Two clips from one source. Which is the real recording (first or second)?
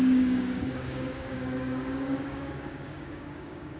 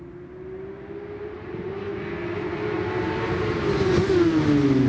second